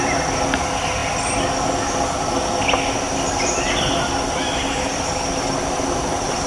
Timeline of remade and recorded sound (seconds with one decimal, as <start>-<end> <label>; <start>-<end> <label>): 0.0-6.5 recorded